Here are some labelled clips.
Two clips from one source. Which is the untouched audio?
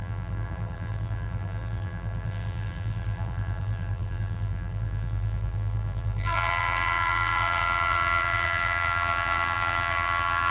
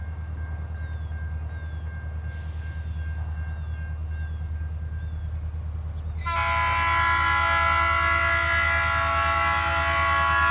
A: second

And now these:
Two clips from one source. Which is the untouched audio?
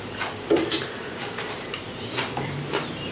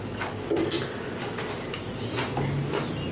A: second